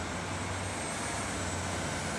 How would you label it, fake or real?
real